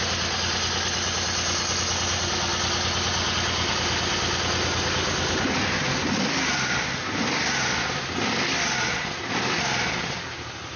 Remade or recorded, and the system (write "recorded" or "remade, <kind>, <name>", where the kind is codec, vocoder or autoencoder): recorded